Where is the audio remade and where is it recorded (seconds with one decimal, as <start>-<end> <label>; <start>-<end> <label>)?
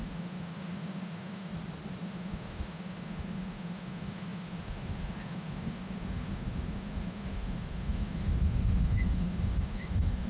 0.0-1.5 remade; 1.5-2.0 recorded; 2.0-10.3 remade